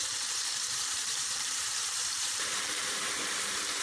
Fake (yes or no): yes